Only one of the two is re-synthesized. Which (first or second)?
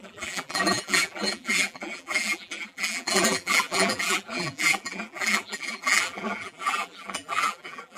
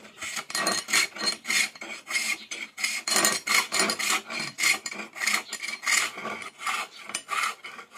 first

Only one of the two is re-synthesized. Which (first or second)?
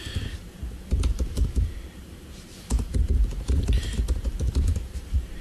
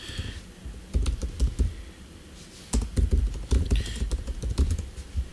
first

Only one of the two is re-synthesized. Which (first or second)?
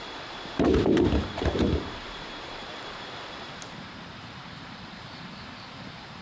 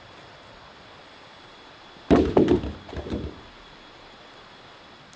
first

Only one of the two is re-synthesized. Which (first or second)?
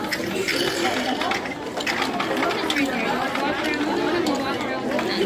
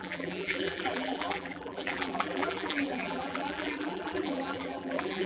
second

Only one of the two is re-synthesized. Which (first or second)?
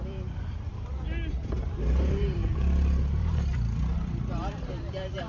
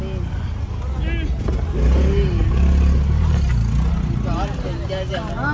first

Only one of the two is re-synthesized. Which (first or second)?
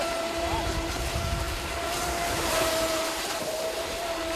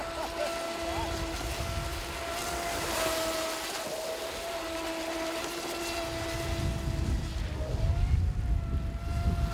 first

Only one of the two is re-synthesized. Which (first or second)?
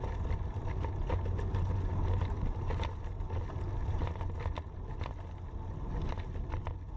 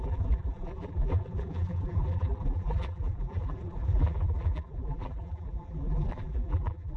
second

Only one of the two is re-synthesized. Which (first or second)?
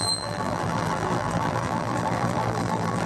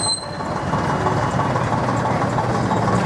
first